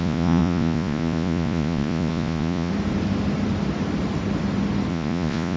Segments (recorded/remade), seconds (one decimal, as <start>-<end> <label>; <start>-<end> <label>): 0.0-2.7 remade; 2.7-4.9 recorded; 4.9-5.6 remade